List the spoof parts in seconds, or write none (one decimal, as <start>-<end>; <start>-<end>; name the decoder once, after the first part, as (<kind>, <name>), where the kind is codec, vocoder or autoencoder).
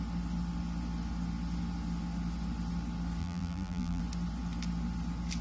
3.2-4.0 (vocoder, BigVGAN v2)